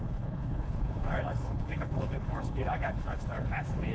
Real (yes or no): no